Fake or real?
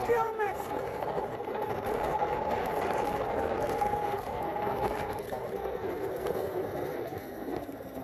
fake